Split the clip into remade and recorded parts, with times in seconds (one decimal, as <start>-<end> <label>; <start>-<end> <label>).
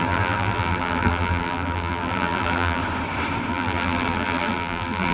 0.0-2.8 remade; 2.8-3.5 recorded; 3.5-5.1 remade